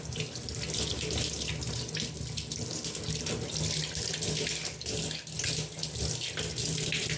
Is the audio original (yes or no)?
yes